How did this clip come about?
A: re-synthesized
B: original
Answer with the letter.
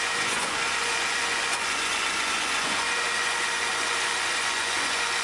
A